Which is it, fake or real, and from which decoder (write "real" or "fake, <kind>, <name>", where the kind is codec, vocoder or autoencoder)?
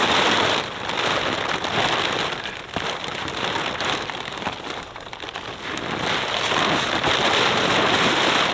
real